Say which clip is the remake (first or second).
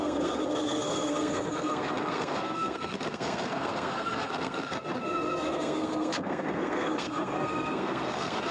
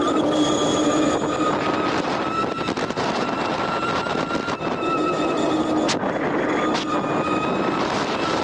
first